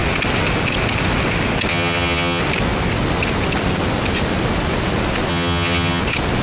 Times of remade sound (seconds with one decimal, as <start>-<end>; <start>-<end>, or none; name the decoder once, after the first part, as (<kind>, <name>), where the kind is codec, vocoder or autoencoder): 1.7-2.4 (vocoder, HiFi-GAN); 5.3-6.0